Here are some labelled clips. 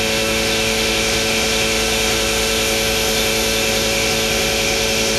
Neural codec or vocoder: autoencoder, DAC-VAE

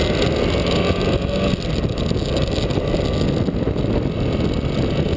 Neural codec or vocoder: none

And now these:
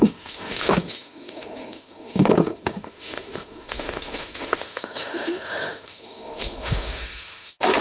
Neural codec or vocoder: autoencoder, DAC-VAE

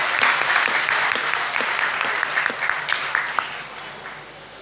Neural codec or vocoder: none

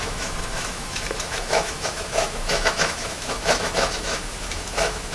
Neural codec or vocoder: autoencoder, DAC-VAE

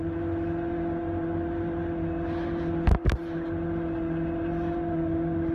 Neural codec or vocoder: none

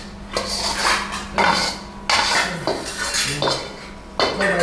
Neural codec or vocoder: none